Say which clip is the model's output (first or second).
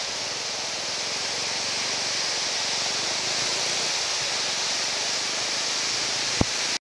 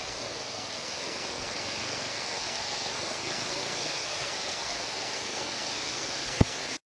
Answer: second